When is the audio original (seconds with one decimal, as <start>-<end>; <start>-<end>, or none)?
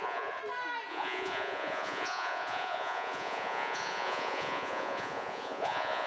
0.4-0.9